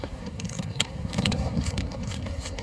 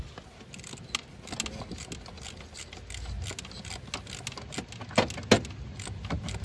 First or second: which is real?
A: second